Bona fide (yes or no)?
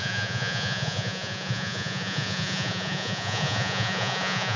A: no